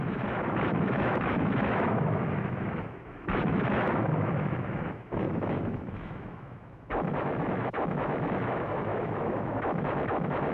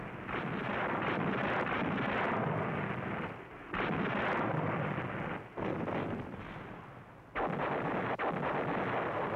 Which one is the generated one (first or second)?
first